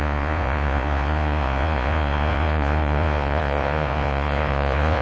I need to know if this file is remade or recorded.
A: remade